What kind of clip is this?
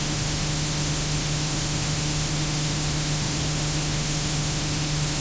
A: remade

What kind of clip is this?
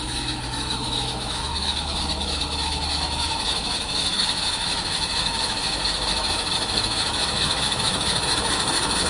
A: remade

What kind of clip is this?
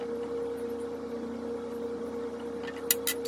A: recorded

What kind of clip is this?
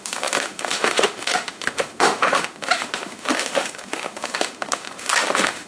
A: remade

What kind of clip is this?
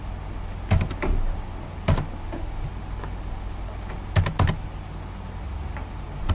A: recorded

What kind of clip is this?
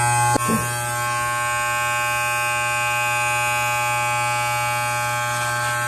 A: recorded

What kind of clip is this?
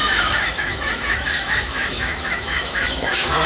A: remade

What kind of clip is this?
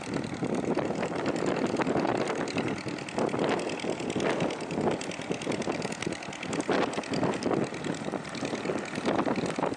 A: recorded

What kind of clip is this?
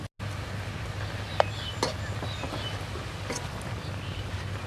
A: recorded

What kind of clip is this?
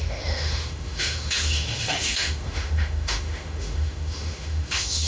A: remade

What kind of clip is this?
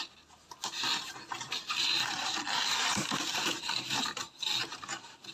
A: recorded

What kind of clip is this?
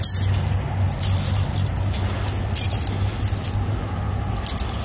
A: recorded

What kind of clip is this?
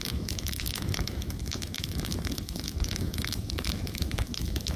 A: remade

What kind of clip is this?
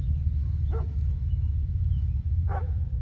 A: remade